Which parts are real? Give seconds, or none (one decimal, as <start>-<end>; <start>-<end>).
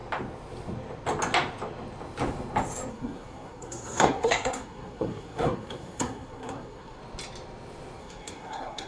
0.0-2.9; 7.0-8.0